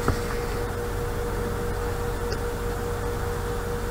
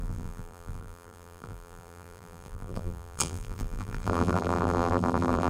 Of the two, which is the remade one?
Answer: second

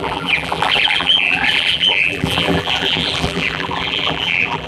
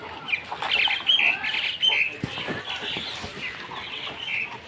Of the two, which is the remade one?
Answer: first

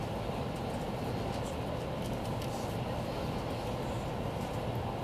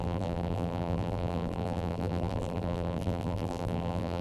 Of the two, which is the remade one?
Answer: second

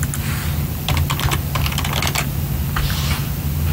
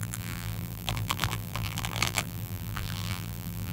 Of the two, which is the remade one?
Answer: second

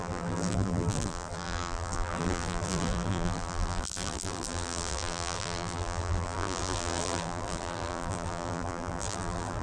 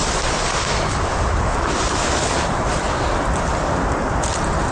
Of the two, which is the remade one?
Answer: first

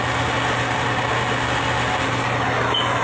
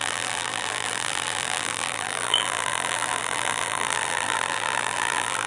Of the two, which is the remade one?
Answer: second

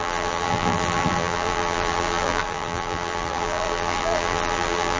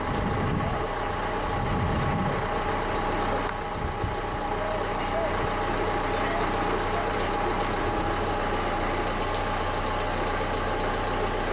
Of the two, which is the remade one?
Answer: first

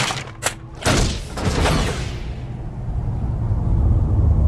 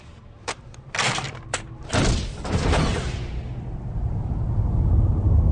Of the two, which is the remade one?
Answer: second